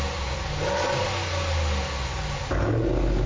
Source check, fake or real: real